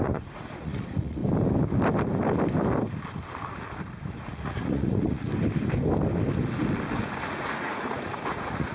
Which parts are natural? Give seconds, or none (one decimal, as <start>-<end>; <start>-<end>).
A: 1.2-4.1; 5.3-7.3